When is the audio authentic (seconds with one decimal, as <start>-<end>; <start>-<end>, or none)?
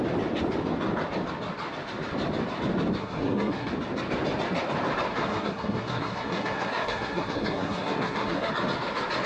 0.0-3.0; 3.7-5.1; 8.5-9.3